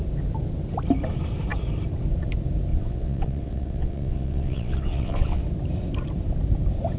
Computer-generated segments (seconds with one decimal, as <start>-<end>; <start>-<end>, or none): 2.7-5.4